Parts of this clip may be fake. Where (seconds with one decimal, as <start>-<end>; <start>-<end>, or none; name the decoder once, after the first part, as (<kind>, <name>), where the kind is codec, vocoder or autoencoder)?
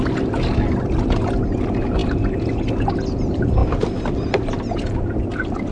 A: none